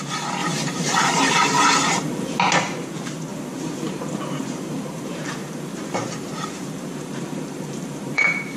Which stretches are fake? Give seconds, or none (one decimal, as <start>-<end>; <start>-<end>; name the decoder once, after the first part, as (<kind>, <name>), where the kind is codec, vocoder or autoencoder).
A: 0.4-2.4 (vocoder, BigVGAN v2); 3.3-8.2